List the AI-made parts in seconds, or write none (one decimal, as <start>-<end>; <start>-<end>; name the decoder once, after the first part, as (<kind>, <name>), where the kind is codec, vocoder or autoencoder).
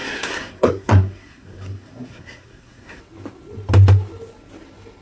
0.0-3.0 (codec, SNAC)